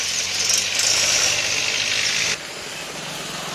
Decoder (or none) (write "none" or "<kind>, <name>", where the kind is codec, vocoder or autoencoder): none